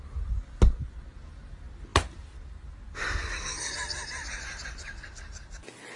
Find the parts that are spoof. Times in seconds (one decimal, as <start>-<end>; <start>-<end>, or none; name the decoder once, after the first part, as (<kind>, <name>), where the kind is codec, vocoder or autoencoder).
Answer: none